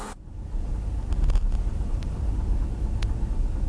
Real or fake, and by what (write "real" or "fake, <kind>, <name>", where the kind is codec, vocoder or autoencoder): real